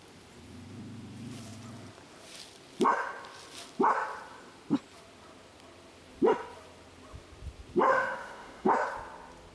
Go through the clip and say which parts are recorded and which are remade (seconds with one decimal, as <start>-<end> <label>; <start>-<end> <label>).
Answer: 0.0-7.9 recorded; 7.9-8.7 remade; 8.7-9.5 recorded